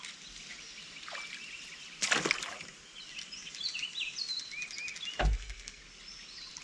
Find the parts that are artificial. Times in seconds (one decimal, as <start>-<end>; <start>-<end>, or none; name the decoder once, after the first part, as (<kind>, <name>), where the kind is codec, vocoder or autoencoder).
5.2-5.8 (codec, SNAC)